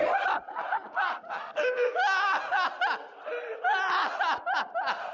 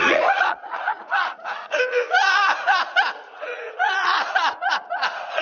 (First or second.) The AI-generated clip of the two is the second